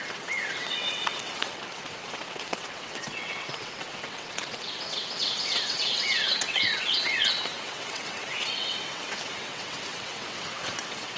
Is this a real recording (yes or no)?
no